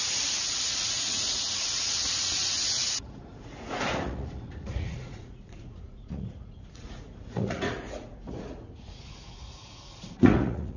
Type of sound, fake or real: fake